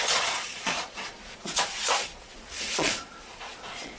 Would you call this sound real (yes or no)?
no